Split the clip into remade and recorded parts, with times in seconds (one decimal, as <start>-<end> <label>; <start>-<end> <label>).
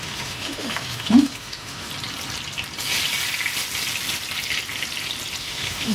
0.0-1.9 remade; 1.9-5.4 recorded; 5.4-5.9 remade